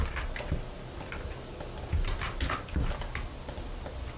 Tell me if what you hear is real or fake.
real